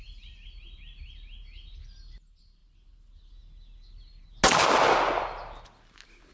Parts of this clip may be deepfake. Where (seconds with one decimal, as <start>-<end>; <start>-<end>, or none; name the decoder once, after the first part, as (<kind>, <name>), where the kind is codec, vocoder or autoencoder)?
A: none